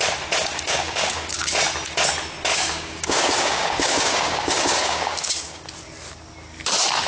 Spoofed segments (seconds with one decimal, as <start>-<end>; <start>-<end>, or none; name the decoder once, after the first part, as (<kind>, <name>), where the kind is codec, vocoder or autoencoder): 0.4-1.5 (codec, DAC); 2.5-5.6